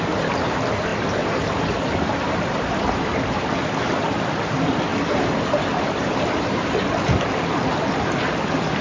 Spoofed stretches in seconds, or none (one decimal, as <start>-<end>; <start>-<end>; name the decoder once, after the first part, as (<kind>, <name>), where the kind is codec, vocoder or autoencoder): 4.9-6.9 (vocoder, BigVGAN v2)